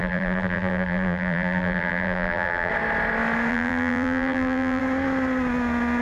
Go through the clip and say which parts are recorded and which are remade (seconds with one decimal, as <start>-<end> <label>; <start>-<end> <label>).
0.0-2.7 remade; 2.7-3.5 recorded; 3.5-4.8 remade; 4.8-6.0 recorded